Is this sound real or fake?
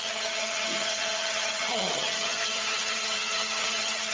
fake